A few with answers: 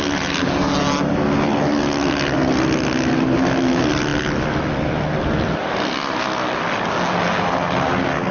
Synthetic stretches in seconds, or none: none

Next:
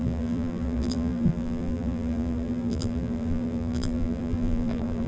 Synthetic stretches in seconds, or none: 0.0-5.1 (vocoder, BigVGAN v2)

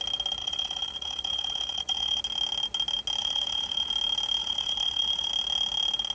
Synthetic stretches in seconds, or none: 0.4-2.2 (vocoder, Vocos); 3.2-3.9; 4.4-5.3